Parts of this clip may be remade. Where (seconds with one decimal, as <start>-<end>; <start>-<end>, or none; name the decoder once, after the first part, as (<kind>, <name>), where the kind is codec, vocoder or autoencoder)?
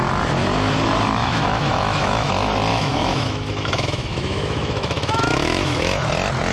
1.2-2.3 (autoencoder, DAC-VAE); 2.7-6.1